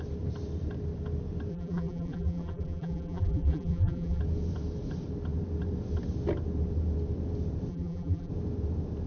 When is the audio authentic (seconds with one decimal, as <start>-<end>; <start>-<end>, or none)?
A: 0.0-1.5; 4.2-7.7; 8.3-9.1